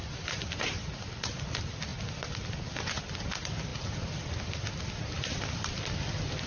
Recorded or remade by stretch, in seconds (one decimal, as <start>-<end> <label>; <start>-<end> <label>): 0.0-1.9 remade; 1.9-3.0 recorded; 3.0-6.5 remade